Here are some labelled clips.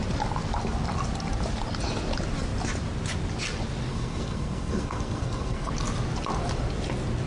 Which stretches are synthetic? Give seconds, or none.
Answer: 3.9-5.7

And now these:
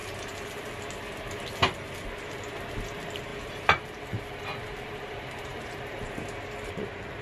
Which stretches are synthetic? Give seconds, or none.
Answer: 0.0-0.6; 3.3-6.7

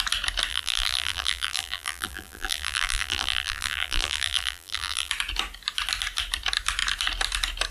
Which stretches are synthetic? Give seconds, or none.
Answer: 0.5-5.1